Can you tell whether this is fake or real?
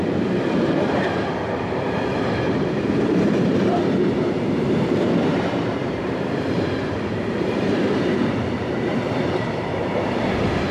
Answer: fake